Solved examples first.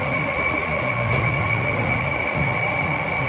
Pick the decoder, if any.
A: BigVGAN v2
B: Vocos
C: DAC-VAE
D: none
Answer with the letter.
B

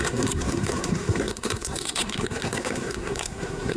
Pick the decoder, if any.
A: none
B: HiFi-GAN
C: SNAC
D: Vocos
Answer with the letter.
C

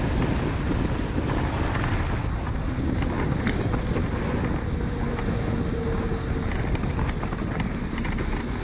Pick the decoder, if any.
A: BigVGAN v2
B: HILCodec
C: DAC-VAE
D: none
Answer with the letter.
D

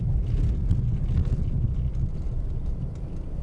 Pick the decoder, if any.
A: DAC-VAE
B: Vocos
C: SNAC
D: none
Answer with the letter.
D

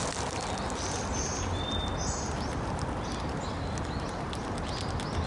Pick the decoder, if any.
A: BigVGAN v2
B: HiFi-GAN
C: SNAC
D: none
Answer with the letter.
D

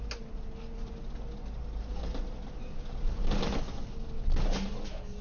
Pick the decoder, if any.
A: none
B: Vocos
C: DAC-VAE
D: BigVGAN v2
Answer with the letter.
A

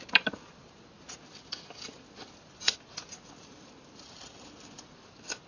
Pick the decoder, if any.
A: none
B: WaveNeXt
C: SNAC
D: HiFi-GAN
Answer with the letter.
A